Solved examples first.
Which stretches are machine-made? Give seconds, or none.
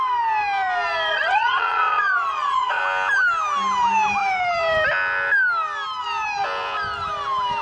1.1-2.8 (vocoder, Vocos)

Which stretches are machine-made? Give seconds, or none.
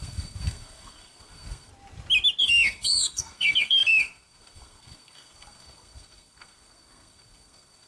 0.0-1.7 (codec, SNAC); 2.4-7.9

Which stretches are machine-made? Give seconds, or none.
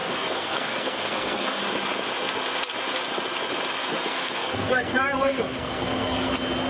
0.0-1.6 (codec, SNAC); 3.8-6.3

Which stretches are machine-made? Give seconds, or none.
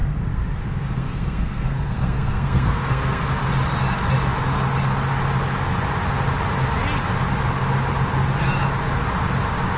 0.0-3.2 (codec, SNAC)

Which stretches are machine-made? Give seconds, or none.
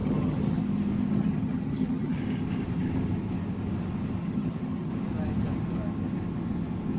0.0-0.6 (vocoder, HiFi-GAN); 1.1-2.2; 4.2-4.9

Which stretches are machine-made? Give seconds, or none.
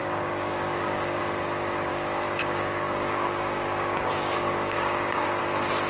0.0-1.2 (codec, DAC); 1.9-5.4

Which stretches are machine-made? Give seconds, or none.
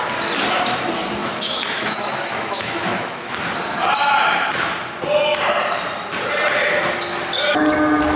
1.2-3.3 (autoencoder, DAC-VAE)